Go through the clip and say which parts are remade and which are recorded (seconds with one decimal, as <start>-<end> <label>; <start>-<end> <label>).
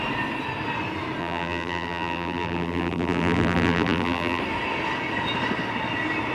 0.0-1.2 recorded; 1.2-4.4 remade; 4.4-6.3 recorded